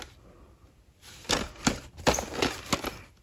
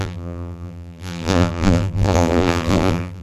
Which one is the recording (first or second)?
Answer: first